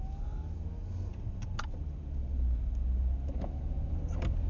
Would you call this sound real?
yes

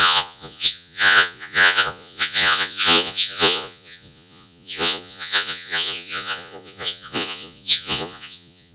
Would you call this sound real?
no